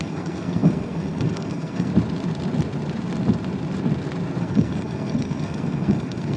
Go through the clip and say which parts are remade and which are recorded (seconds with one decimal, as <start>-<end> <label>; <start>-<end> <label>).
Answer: 0.0-1.9 remade; 1.9-4.4 recorded; 4.4-6.4 remade